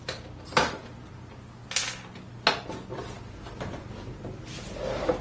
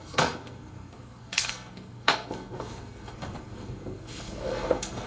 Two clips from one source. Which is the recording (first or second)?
first